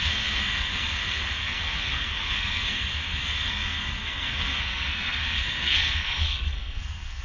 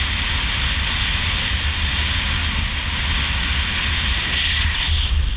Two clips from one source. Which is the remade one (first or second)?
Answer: first